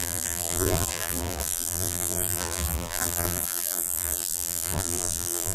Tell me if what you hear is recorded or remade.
remade